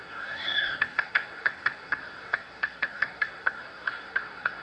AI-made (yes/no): yes